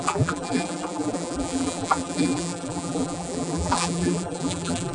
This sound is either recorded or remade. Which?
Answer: remade